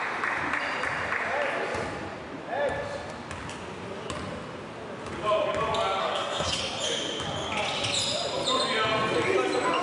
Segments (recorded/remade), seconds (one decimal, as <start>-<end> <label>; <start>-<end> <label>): 0.0-6.0 recorded; 6.0-6.6 remade; 6.6-9.8 recorded